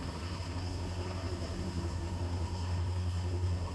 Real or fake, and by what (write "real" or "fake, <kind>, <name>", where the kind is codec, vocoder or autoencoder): fake, codec, SNAC